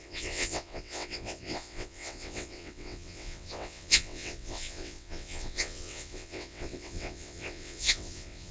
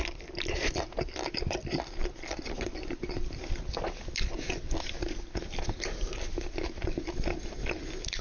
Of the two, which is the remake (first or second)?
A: first